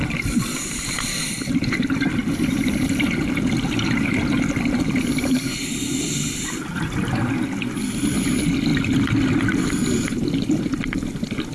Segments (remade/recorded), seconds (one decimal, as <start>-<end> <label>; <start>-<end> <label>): 0.0-11.5 remade